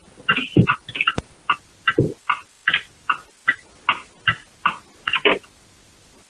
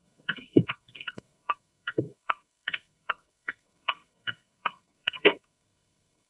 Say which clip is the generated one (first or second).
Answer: second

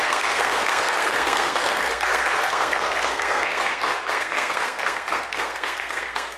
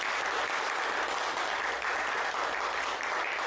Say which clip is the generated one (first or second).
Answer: first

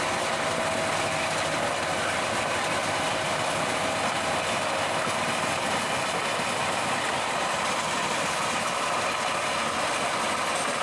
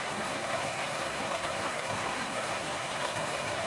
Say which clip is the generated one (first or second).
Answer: second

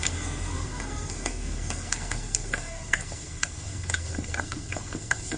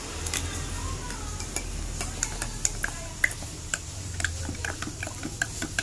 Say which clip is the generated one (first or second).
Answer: first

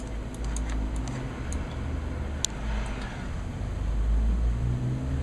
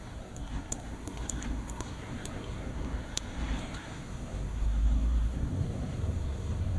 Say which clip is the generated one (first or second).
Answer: second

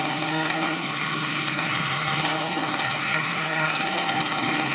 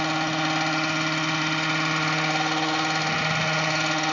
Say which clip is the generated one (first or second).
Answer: first